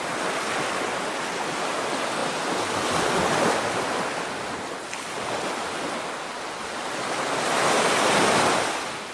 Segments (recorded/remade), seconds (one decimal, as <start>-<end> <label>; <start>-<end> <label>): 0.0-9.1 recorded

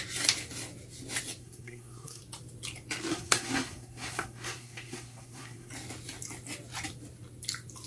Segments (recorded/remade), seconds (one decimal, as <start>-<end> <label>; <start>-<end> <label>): 0.0-1.4 recorded; 1.4-2.2 remade; 2.2-3.1 recorded; 3.1-5.7 remade; 5.7-7.9 recorded

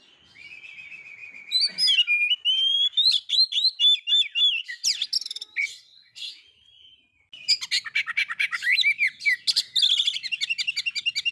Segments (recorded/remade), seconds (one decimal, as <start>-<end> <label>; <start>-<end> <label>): 0.0-5.7 recorded; 5.7-6.3 remade; 6.3-11.3 recorded